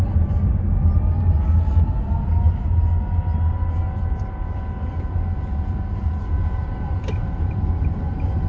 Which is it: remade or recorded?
recorded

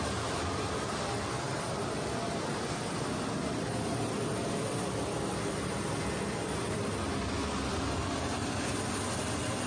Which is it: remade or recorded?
recorded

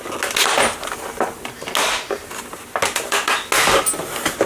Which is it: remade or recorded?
recorded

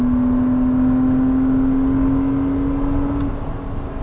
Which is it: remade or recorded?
recorded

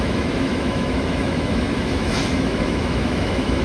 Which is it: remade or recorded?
remade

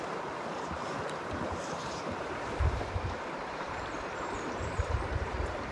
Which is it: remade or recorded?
remade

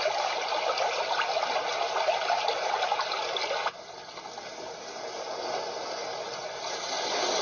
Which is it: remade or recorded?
recorded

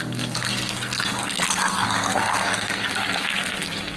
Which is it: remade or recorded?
remade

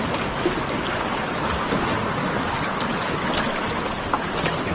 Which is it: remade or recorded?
recorded